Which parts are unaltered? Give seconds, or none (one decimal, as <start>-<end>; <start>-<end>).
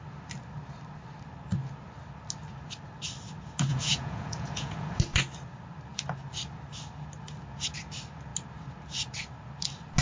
0.0-3.7; 5.0-10.0